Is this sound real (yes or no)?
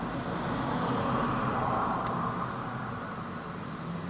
yes